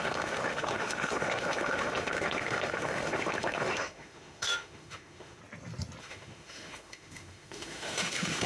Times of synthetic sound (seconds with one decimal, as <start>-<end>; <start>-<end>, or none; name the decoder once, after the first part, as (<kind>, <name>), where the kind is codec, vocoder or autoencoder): 0.0-5.4 (autoencoder, DAC-VAE); 6.0-8.5